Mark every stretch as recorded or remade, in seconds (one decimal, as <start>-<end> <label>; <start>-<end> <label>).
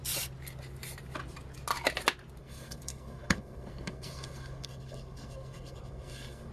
0.0-2.4 recorded; 2.4-6.5 remade